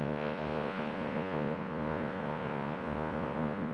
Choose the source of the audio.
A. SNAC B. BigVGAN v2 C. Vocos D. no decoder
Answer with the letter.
C